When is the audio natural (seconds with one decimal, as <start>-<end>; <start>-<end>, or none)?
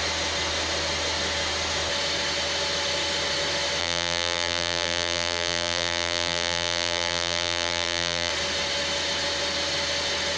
0.0-3.8; 8.3-10.4